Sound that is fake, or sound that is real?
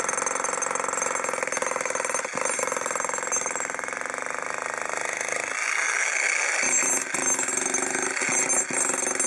real